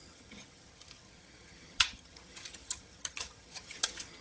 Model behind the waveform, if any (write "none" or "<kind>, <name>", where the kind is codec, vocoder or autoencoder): vocoder, HiFi-GAN